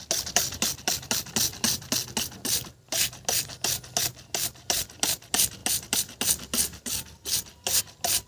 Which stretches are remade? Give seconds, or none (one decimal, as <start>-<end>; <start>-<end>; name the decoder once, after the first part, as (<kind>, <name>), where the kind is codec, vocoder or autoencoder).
none